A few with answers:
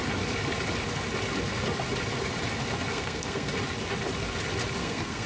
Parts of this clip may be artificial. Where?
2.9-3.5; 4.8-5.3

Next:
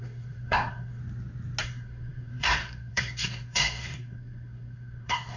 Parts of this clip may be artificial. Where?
0.0-1.0; 1.6-5.4

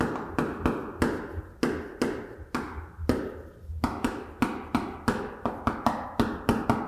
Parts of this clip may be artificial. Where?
none

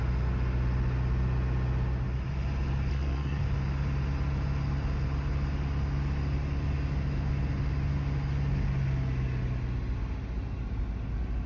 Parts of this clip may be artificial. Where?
2.9-3.4

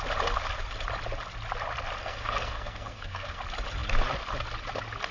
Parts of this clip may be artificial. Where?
2.0-3.4